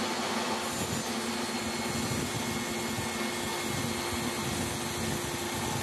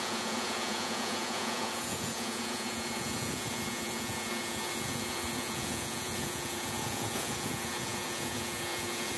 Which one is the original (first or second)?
first